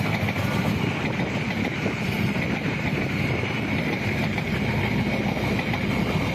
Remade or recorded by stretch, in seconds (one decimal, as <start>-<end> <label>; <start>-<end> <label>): 0.0-1.8 recorded; 1.8-4.7 remade; 4.7-6.3 recorded